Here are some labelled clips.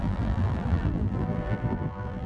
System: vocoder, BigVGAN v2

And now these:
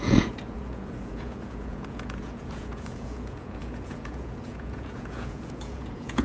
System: vocoder, Vocos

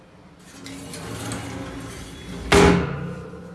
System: none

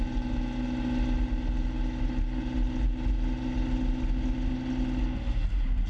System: none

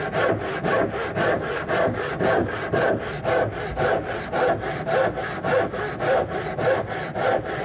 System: none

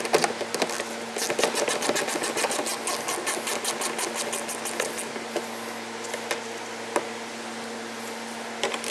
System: none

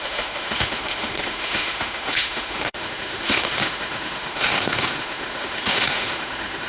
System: autoencoder, DAC-VAE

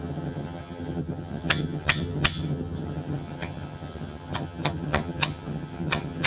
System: vocoder, HiFi-GAN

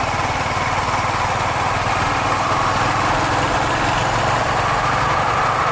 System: none